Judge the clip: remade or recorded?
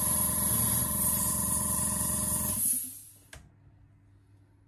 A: recorded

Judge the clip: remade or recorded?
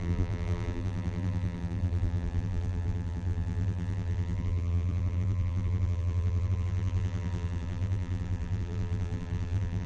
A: remade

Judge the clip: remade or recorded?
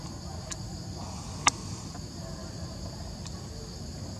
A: recorded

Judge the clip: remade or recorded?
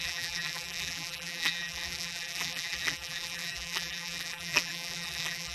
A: remade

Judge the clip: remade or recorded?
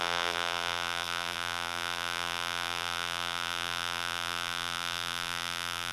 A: remade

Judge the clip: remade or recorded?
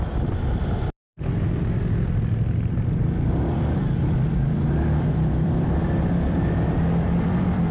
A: remade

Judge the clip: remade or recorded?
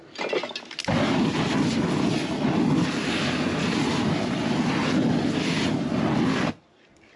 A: recorded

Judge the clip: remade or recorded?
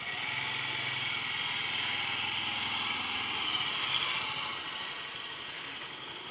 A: recorded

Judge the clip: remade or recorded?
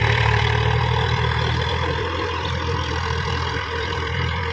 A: remade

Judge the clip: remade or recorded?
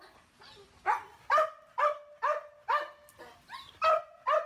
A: recorded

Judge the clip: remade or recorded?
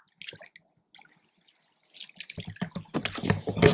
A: recorded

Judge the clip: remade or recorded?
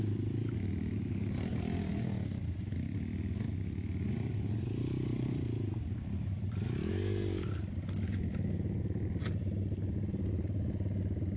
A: recorded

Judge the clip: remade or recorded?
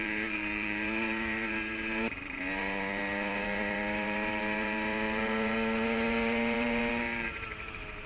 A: remade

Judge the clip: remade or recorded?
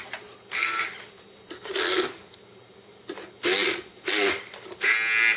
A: recorded